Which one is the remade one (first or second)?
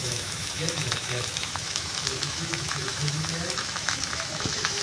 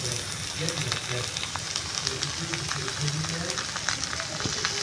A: first